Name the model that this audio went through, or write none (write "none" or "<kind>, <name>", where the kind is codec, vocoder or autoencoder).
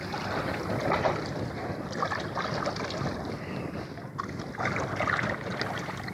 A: none